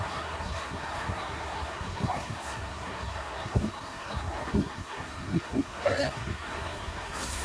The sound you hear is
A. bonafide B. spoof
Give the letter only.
B